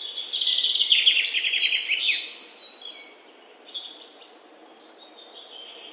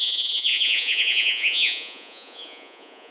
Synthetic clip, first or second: second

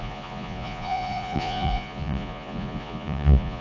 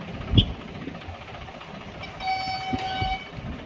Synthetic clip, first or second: first